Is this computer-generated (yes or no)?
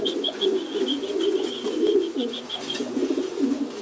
yes